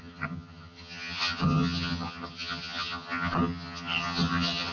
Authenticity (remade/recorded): remade